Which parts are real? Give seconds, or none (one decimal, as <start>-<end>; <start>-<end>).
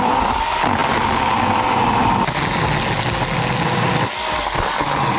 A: 0.0-5.2